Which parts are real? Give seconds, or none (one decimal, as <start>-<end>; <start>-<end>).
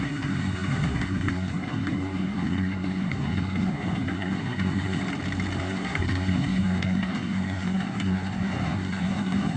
5.0-5.6